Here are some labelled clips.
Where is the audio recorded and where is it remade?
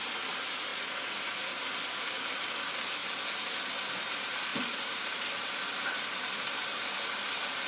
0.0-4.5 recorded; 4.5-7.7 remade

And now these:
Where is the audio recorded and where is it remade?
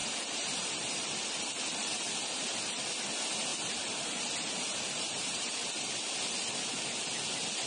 0.0-1.3 remade; 1.3-3.5 recorded; 3.5-4.2 remade; 4.2-4.7 recorded; 4.7-5.7 remade; 5.7-7.7 recorded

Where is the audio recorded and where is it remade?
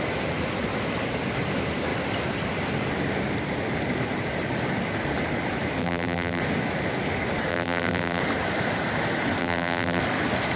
0.0-5.8 recorded; 5.8-6.4 remade; 6.4-7.5 recorded; 7.5-8.2 remade; 8.2-9.4 recorded; 9.4-10.0 remade; 10.0-10.6 recorded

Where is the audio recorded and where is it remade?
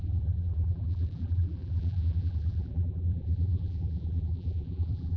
0.0-5.2 remade